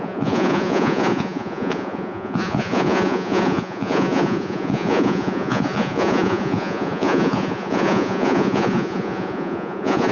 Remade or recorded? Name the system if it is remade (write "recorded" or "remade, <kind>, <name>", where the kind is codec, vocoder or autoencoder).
remade, vocoder, Vocos